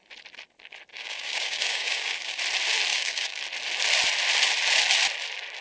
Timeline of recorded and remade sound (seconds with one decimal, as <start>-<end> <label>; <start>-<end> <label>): 0.0-0.9 recorded; 0.9-2.4 remade; 2.4-2.9 recorded; 2.9-3.4 remade; 3.4-5.6 recorded